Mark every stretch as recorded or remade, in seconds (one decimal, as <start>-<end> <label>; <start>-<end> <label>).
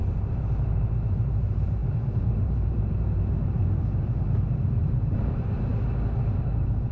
0.0-5.7 remade; 5.7-6.9 recorded